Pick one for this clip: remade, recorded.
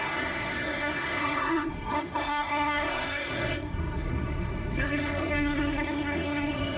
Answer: remade